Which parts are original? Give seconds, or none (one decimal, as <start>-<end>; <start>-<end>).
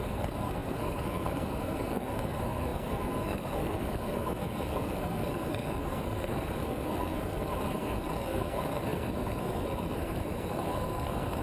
none